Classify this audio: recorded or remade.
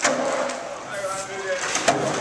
recorded